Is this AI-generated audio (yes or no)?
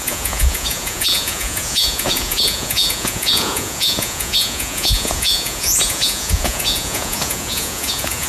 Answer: yes